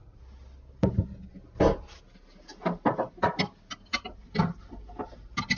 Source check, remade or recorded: recorded